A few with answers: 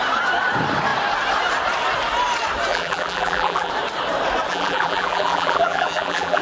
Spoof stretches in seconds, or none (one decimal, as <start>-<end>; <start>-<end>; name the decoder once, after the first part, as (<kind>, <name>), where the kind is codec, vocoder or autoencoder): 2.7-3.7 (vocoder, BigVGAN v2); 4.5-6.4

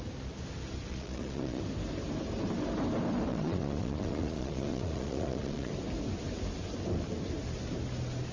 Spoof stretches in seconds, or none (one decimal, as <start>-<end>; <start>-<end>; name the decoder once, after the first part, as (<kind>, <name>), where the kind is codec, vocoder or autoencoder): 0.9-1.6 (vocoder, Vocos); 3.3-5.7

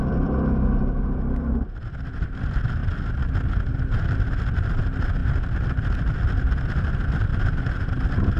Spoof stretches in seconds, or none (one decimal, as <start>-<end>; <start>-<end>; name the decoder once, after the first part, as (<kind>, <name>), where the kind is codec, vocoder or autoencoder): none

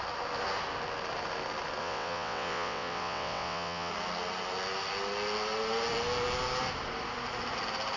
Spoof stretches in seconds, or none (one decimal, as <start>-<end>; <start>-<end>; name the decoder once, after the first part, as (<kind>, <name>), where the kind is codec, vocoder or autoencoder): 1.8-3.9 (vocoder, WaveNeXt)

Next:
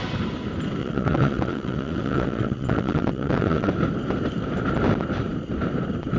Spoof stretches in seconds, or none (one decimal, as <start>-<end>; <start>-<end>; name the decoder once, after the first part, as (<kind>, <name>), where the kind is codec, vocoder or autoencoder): 0.8-3.7 (vocoder, WaveNeXt)

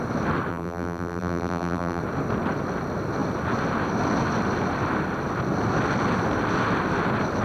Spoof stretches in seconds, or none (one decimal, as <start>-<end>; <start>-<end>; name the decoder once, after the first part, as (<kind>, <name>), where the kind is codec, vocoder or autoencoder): 0.5-2.0 (vocoder, BigVGAN v2)

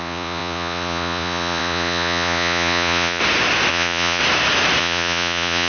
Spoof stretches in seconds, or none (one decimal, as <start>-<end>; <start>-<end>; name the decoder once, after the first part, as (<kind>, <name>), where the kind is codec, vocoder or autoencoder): 0.0-3.2 (vocoder, Vocos); 3.7-4.2; 4.8-5.7